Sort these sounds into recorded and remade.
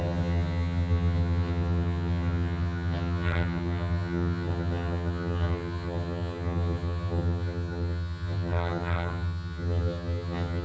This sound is remade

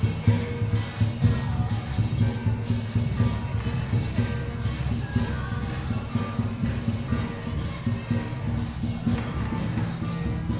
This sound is recorded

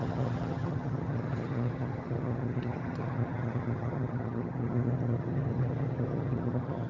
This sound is remade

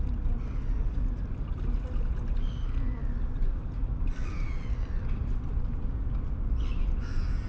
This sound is recorded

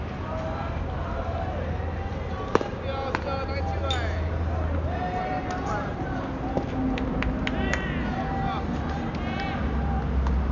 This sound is recorded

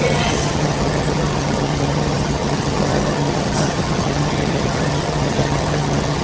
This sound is remade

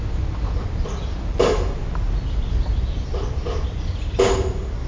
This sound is recorded